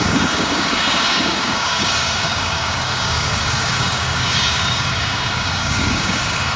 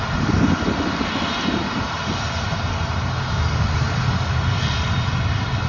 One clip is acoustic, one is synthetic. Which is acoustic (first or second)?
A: second